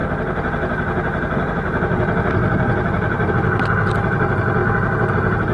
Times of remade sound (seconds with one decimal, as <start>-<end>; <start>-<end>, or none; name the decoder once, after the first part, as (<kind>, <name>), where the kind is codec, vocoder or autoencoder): none